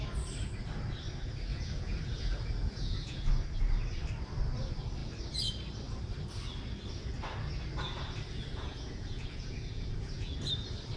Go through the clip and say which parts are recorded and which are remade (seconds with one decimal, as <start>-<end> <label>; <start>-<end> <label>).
0.0-1.5 recorded; 1.5-3.3 remade; 3.3-8.5 recorded; 8.5-10.3 remade; 10.3-11.0 recorded